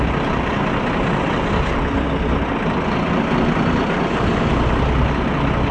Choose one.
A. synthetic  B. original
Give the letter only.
B